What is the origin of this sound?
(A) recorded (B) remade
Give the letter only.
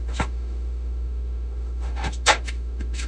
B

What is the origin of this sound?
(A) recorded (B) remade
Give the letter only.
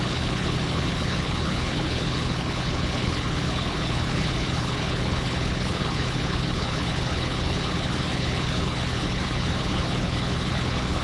B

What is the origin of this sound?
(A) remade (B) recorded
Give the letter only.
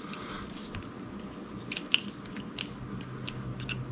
B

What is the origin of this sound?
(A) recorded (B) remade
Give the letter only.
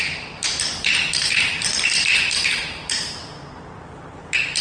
B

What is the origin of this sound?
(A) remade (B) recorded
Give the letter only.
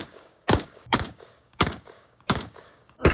A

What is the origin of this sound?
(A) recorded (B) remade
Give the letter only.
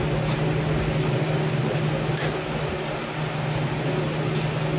A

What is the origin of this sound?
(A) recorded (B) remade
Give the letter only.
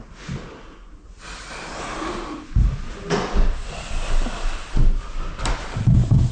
A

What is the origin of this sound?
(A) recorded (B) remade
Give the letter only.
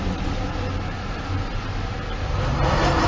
A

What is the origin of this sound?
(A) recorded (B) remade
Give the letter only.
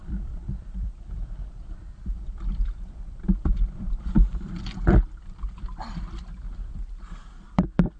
B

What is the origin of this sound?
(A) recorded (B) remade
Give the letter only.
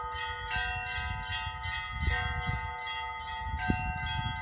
A